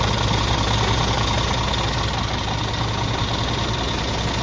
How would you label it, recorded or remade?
recorded